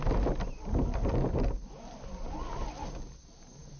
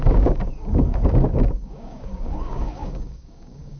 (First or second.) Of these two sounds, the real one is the first